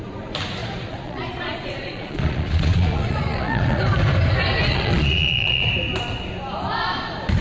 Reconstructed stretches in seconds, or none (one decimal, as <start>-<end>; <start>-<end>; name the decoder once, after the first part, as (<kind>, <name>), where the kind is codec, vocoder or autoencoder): 0.6-3.8 (vocoder, Vocos); 4.7-5.7